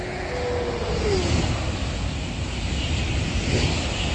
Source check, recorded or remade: recorded